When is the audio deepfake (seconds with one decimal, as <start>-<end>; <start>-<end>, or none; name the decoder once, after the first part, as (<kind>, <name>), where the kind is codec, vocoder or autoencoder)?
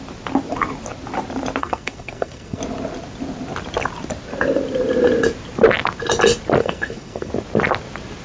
1.6-2.6 (codec, SNAC); 6.6-7.3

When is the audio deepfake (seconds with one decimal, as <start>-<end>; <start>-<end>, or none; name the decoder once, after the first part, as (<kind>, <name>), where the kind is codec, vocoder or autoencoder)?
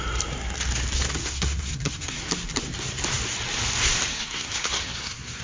1.2-2.3 (codec, SNAC); 4.1-5.4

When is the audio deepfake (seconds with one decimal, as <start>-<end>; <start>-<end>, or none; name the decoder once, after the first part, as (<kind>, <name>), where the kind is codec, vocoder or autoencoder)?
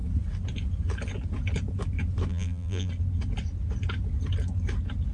2.3-2.9 (vocoder, BigVGAN v2)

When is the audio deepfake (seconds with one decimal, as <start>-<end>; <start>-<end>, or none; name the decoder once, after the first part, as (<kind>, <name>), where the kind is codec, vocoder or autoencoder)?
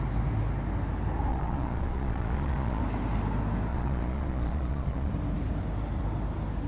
1.3-2.8 (vocoder, Vocos); 3.7-5.1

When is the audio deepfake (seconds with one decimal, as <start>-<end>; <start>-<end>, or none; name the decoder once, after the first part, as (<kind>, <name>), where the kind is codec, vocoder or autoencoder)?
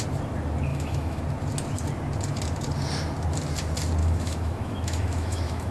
0.7-1.2 (autoencoder, DAC-VAE); 4.0-5.7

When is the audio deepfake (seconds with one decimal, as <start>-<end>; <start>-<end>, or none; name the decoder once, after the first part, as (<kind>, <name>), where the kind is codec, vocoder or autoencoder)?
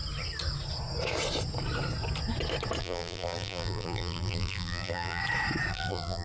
2.8-5.2 (vocoder, BigVGAN v2); 5.7-6.2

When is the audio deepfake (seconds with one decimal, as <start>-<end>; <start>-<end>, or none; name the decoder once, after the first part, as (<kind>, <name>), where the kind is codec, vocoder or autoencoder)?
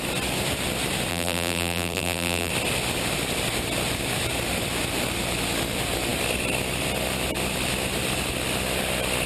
1.1-2.5 (vocoder, BigVGAN v2)